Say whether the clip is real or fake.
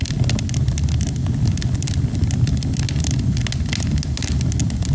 real